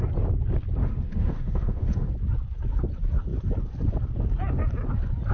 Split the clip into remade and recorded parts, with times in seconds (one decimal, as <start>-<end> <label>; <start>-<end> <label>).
0.0-0.8 recorded; 0.8-2.1 remade; 2.1-5.3 recorded

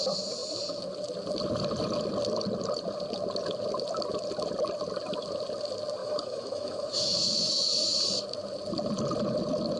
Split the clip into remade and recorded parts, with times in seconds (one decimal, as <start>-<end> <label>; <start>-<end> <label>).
0.0-6.0 recorded; 6.0-8.0 remade; 8.0-9.8 recorded